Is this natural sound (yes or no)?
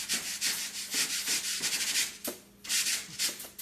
yes